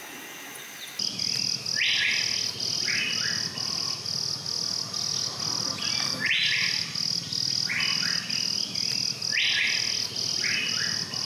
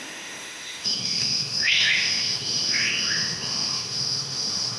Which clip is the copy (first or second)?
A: second